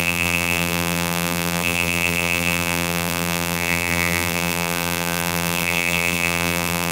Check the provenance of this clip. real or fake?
fake